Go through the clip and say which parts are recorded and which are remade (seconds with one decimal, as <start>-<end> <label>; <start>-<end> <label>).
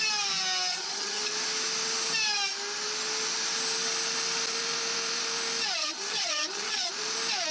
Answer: 0.0-0.7 recorded; 0.7-1.2 remade; 1.2-5.8 recorded; 5.8-6.9 remade; 6.9-7.5 recorded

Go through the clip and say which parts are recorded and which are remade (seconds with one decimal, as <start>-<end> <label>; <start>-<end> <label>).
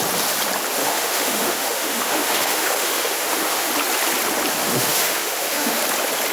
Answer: 0.0-0.8 recorded; 0.8-3.7 remade; 3.7-4.6 recorded; 4.6-5.8 remade; 5.8-6.3 recorded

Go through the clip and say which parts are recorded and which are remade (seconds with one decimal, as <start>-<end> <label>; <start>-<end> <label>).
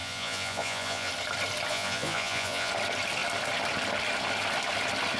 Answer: 0.0-1.1 remade; 1.1-1.7 recorded; 1.7-2.7 remade; 2.7-5.2 recorded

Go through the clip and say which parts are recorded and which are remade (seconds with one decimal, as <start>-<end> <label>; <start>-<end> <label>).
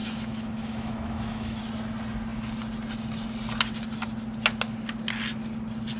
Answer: 0.0-1.6 remade; 1.6-6.0 recorded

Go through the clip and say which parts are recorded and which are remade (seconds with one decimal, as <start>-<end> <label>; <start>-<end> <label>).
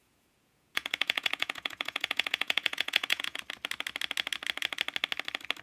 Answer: 0.0-3.4 remade; 3.4-5.6 recorded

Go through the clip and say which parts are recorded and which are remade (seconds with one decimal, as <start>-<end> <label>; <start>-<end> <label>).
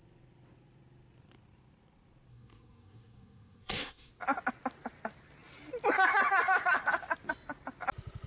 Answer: 0.0-2.3 recorded; 2.3-4.1 remade; 4.1-8.3 recorded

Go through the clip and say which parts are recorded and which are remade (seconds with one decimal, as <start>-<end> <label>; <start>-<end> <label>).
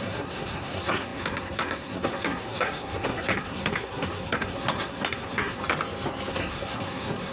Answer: 0.0-5.6 remade; 5.6-6.3 recorded; 6.3-7.3 remade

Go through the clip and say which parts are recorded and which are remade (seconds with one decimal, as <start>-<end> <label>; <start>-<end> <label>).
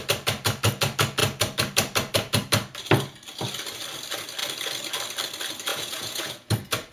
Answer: 0.0-5.7 recorded; 5.7-6.5 remade; 6.5-6.9 recorded